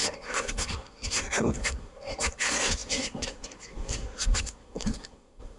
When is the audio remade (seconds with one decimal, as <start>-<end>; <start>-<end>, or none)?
0.0-5.6